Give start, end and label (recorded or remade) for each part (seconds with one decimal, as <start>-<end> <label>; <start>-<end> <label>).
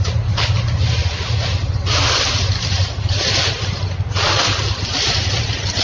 0.0-5.8 recorded